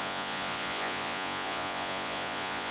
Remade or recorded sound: remade